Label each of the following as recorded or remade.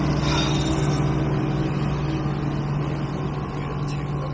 recorded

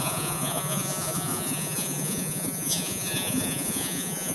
remade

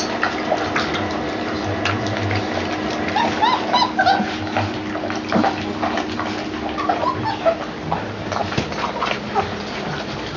recorded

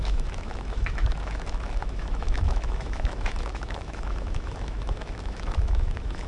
remade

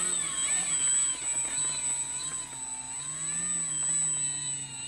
recorded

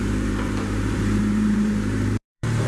remade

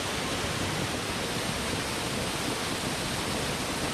recorded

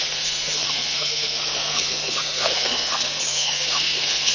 remade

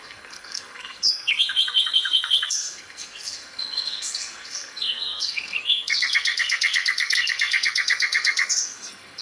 remade